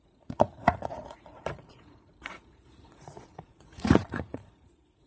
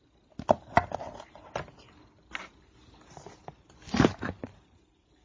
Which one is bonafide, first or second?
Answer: second